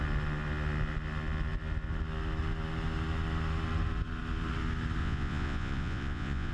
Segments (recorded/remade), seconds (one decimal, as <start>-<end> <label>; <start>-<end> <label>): 0.0-5.0 recorded; 5.0-6.5 remade

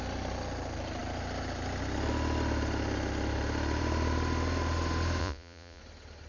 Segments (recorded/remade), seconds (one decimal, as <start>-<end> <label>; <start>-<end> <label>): 0.0-5.2 recorded; 5.2-5.8 remade; 5.8-6.3 recorded

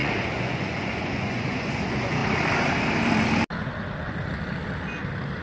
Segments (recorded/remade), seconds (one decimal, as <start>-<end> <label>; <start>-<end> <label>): 0.0-2.2 remade; 2.2-5.4 recorded

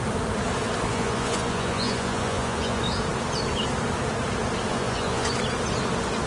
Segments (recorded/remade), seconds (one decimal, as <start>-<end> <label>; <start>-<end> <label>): 0.0-0.9 recorded; 0.9-2.8 remade; 2.8-4.7 recorded; 4.7-5.3 remade; 5.3-6.3 recorded

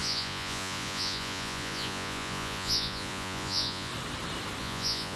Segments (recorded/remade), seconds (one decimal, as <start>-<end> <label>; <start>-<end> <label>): 0.0-3.9 remade; 3.9-4.6 recorded; 4.6-5.2 remade

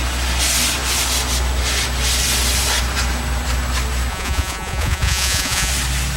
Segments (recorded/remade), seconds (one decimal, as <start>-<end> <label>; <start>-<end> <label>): 0.0-4.1 recorded; 4.1-5.7 remade; 5.7-6.2 recorded